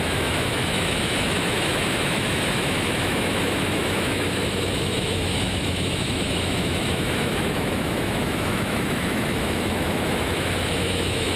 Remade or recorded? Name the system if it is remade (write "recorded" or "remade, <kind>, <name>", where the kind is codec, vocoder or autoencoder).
remade, autoencoder, DAC-VAE